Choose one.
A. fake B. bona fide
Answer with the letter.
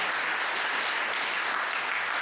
B